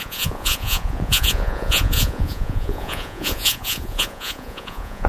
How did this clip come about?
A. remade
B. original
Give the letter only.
A